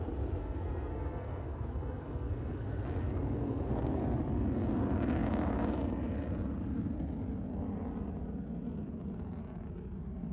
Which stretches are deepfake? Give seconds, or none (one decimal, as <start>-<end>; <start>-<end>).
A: 0.4-4.0